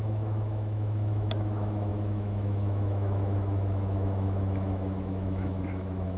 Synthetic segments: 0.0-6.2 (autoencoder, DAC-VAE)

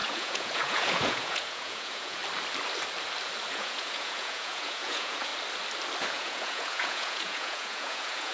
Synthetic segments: 0.0-2.2 (vocoder, Vocos); 3.5-5.3; 6.1-8.3

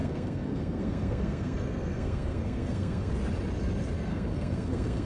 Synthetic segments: 0.0-3.1 (codec, SNAC); 4.1-5.1

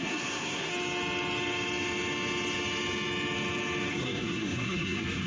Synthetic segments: 0.0-0.7 (codec, SNAC); 3.9-5.3

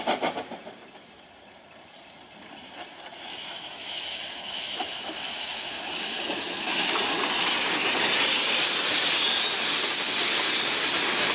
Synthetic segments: 3.3-7.0 (autoencoder, DAC-VAE)

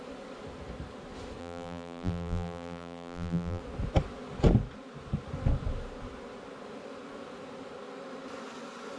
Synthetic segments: 1.4-3.6 (vocoder, BigVGAN v2)

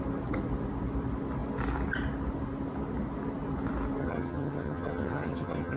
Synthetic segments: 4.0-5.8 (vocoder, HiFi-GAN)